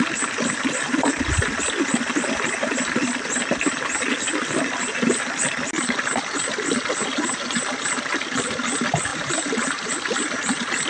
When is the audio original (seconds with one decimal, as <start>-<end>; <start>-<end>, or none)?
0.0-9.1; 9.9-10.9